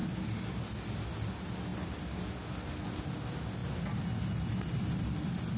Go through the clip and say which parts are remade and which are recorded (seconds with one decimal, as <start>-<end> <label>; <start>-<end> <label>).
0.0-5.6 recorded